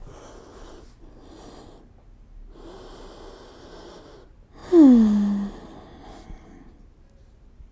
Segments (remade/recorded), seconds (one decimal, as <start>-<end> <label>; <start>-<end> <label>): 0.0-7.7 recorded